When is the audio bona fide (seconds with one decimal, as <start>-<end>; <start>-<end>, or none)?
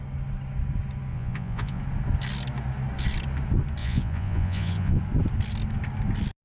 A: 0.0-1.1; 1.8-3.8; 5.0-6.4